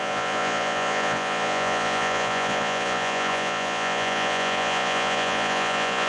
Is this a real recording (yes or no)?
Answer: no